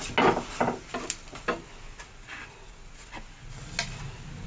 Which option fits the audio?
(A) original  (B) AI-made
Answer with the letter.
A